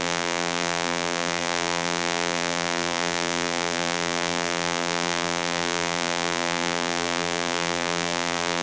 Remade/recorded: remade